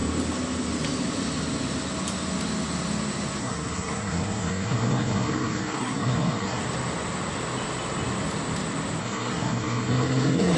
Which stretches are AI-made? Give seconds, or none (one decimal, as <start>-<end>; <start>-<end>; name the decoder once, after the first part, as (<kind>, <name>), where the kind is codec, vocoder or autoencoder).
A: 3.4-6.6 (codec, SNAC); 9.0-10.6